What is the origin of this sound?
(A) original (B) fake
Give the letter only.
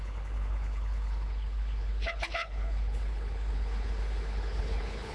B